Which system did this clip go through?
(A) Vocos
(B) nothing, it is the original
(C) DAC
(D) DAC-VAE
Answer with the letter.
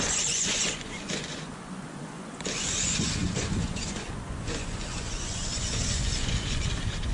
A